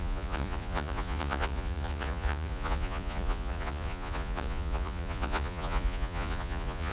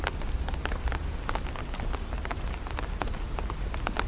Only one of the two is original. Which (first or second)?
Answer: second